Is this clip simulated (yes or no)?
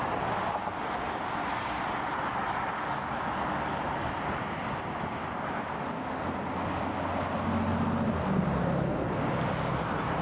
no